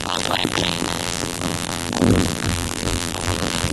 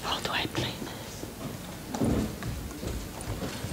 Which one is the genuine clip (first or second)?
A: second